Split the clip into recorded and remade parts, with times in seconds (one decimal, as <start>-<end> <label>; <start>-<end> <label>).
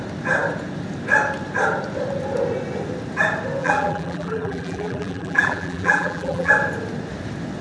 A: 0.0-3.6 recorded; 3.6-6.5 remade; 6.5-7.6 recorded